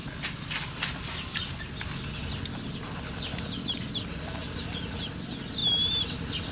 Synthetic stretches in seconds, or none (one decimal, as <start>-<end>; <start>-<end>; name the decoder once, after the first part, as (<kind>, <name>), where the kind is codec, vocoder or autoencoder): none